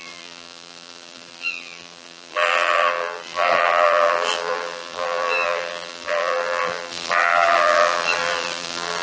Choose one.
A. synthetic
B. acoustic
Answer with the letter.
A